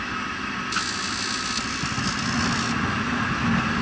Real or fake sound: real